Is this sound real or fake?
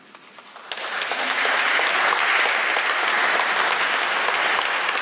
real